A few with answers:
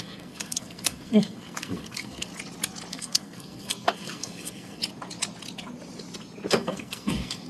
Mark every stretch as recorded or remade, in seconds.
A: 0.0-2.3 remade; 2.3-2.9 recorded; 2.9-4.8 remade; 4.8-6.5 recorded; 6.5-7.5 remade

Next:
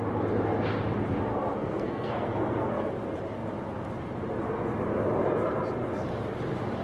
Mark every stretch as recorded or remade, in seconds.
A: 0.0-1.3 recorded; 1.3-2.9 remade; 2.9-6.8 recorded

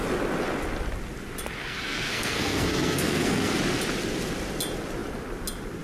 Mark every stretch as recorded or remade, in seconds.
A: 0.0-1.6 recorded; 1.6-3.6 remade; 3.6-5.8 recorded

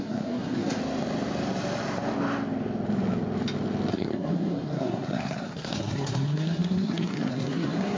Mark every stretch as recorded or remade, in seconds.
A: 0.0-0.8 remade; 0.8-3.9 recorded; 3.9-8.0 remade